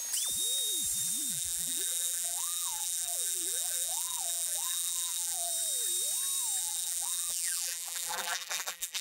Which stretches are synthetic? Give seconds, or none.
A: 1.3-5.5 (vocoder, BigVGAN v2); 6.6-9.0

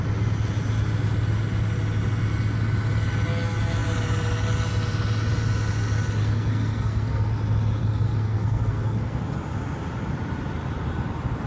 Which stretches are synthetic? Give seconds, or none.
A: 6.2-7.3 (codec, SNAC); 7.8-9.2

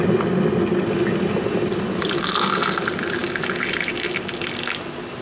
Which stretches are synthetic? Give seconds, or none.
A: none